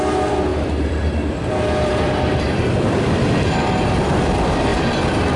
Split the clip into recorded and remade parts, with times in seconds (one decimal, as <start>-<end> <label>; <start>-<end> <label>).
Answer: 0.0-0.5 recorded; 0.5-2.4 remade; 2.4-4.7 recorded; 4.7-5.4 remade